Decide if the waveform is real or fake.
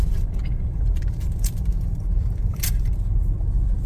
fake